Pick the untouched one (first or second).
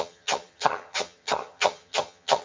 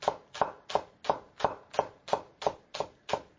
second